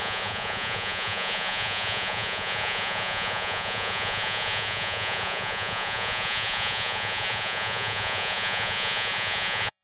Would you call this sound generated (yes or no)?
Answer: yes